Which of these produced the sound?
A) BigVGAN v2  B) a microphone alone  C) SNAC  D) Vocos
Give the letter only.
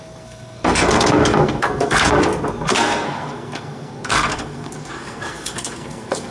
C